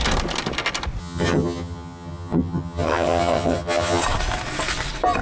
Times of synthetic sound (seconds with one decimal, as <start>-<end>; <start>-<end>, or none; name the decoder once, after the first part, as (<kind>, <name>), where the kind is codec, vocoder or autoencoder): 1.0-4.0 (vocoder, HiFi-GAN)